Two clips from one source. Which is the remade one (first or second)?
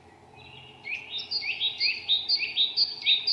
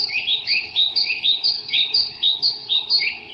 second